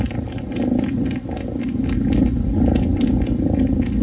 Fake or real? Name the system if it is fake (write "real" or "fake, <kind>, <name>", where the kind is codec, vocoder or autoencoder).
real